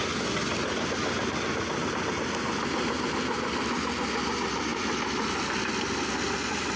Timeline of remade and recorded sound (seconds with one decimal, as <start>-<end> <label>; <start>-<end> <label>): 0.0-4.7 recorded; 4.7-5.6 remade; 5.6-6.8 recorded